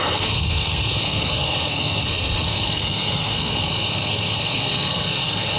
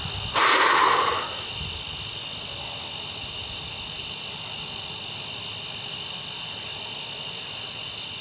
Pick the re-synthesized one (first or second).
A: first